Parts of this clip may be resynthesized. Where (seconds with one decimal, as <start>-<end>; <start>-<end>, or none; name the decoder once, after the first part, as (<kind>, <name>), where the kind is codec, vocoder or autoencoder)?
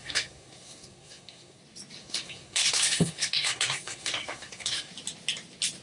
0.0-1.6 (codec, SNAC); 2.0-4.9